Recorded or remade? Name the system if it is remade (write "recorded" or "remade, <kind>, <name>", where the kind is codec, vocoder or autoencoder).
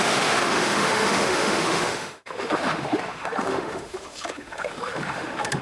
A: remade, autoencoder, DAC-VAE